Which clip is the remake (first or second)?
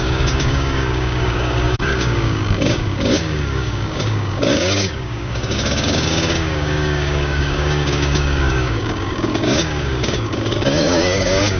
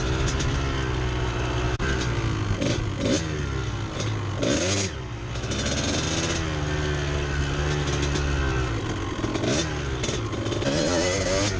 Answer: first